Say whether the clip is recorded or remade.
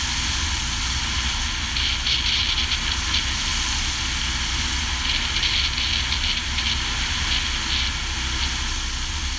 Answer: recorded